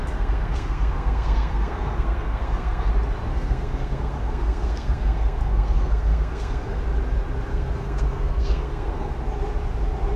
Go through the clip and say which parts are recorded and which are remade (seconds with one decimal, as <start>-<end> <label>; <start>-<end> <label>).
0.0-2.9 remade; 2.9-3.3 recorded; 3.3-6.8 remade; 6.8-7.5 recorded; 7.5-9.1 remade; 9.1-10.2 recorded